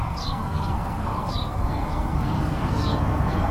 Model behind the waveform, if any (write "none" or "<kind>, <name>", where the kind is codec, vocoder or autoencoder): codec, SNAC